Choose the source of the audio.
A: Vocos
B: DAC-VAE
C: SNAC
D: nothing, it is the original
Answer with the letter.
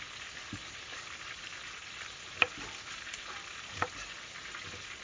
D